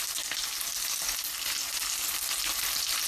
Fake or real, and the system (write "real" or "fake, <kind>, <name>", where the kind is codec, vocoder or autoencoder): real